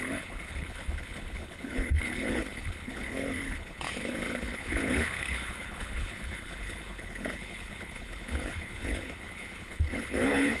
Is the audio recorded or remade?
remade